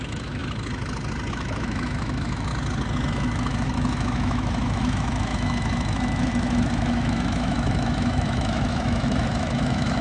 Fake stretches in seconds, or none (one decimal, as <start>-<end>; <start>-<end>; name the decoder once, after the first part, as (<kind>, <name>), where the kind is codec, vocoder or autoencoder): 0.0-0.4 (autoencoder, DAC-VAE); 1.3-2.5; 3.1-10.0